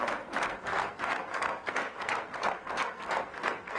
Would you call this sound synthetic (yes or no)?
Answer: yes